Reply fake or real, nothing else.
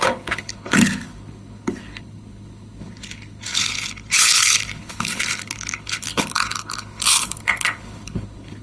fake